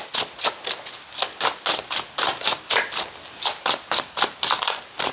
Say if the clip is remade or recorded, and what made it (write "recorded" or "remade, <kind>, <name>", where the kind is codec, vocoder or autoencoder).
recorded